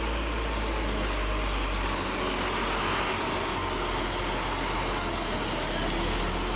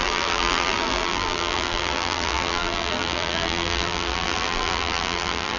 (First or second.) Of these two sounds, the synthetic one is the second